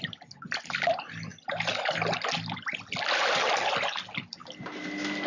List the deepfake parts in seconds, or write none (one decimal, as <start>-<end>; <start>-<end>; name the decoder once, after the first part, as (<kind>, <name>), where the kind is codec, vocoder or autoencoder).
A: none

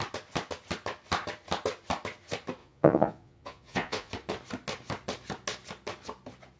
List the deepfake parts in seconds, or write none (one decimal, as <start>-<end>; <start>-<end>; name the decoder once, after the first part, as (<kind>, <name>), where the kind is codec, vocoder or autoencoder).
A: 2.6-4.1 (vocoder, Vocos)

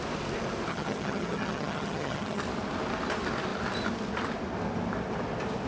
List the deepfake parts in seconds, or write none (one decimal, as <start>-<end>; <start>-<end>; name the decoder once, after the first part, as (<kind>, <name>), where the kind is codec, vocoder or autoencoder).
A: 0.7-2.4 (vocoder, HiFi-GAN)

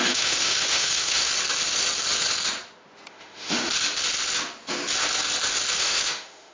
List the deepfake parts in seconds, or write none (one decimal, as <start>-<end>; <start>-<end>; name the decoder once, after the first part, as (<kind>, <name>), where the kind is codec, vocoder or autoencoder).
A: 0.0-1.3 (autoencoder, DAC-VAE); 3.1-3.7; 5.8-6.5

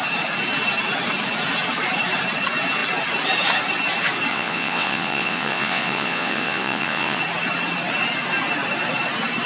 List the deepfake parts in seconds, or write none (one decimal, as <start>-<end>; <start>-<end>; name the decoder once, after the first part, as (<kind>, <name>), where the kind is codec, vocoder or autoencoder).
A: 4.3-7.2 (vocoder, WaveNeXt)

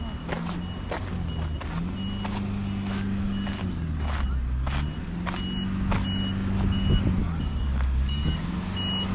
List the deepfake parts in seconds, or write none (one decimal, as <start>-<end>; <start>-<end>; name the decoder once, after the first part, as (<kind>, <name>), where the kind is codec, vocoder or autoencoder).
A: 7.2-8.4 (codec, DAC)